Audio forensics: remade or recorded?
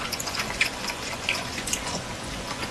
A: remade